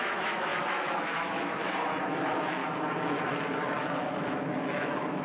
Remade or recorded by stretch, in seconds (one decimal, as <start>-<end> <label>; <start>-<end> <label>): 0.0-2.6 remade; 2.6-3.3 recorded; 3.3-5.2 remade